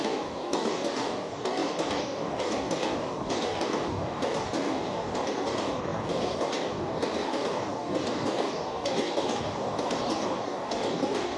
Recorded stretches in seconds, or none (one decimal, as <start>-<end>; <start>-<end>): none